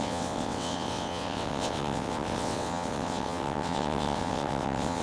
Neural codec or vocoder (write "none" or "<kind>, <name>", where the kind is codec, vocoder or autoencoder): vocoder, WaveNeXt